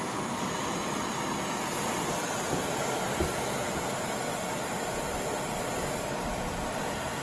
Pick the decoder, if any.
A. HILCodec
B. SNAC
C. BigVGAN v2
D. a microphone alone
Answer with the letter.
D